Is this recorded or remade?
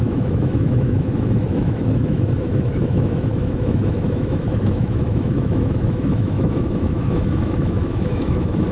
remade